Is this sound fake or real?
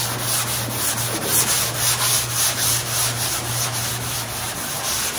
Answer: real